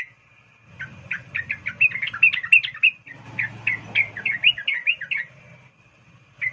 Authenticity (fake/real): real